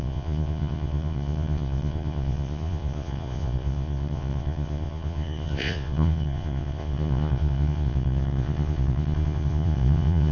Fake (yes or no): yes